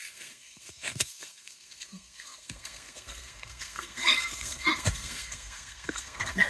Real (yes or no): no